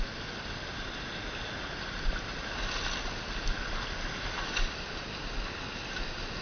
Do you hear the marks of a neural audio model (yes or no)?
no